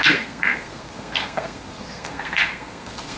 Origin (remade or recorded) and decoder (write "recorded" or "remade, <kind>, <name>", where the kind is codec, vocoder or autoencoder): remade, codec, SNAC